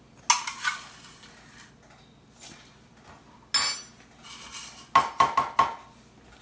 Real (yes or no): yes